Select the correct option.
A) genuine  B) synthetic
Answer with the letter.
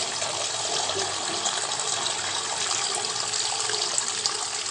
A